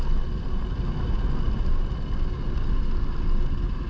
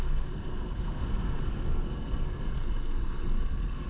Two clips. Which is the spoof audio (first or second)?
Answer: second